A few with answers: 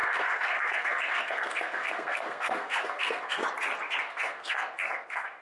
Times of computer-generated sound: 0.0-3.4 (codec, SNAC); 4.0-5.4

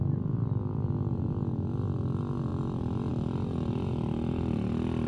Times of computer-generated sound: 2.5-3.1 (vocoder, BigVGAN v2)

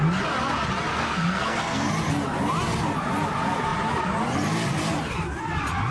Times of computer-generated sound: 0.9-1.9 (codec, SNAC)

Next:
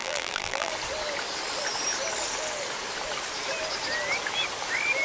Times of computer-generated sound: 0.0-0.7 (vocoder, BigVGAN v2)